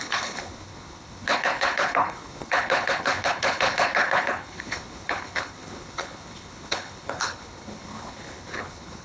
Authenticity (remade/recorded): remade